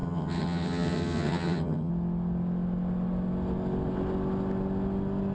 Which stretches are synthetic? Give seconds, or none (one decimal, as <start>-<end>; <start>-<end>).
0.0-1.9